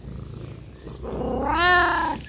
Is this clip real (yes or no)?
yes